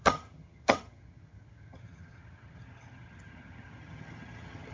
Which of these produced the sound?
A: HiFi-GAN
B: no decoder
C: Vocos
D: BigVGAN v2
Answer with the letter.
A